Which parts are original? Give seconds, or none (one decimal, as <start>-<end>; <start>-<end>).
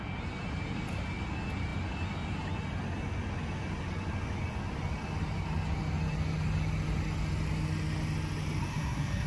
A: 0.0-8.7